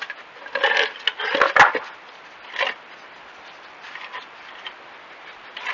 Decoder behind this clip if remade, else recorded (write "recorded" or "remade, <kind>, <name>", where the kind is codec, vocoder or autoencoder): recorded